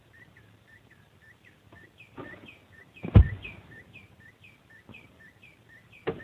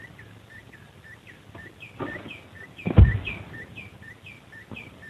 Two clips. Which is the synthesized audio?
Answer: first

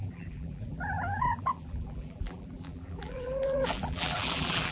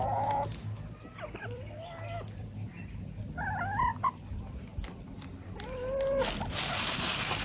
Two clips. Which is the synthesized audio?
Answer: first